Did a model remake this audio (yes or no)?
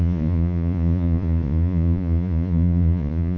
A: yes